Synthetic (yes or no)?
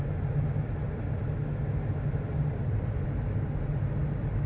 no